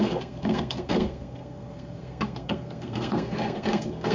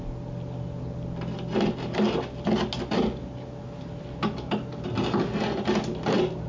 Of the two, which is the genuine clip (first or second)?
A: second